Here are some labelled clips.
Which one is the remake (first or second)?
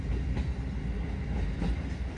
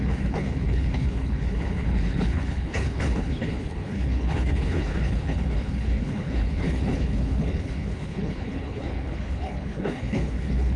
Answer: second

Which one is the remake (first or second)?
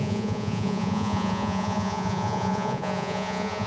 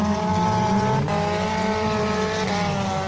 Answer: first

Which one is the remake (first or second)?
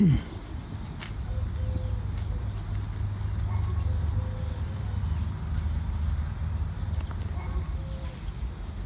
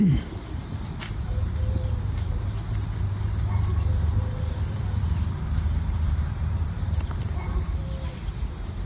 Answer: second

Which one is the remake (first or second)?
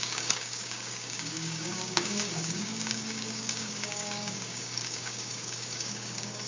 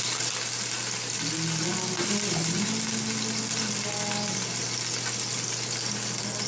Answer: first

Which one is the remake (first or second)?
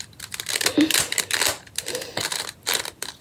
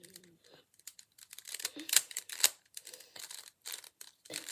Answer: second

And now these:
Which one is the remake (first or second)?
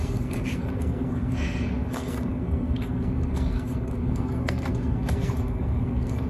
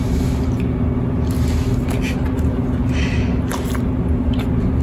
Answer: first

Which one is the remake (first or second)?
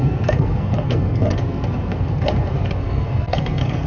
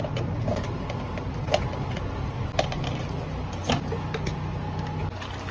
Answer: first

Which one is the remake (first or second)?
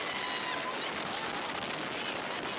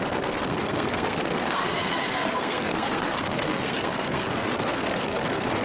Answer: second